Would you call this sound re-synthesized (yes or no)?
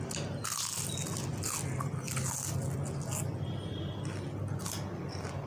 no